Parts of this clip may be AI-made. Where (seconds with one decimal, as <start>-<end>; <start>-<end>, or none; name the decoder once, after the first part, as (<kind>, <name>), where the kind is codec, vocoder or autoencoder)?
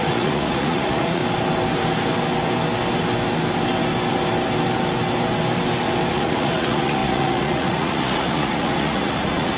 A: 0.0-1.2 (vocoder, Vocos); 6.1-9.6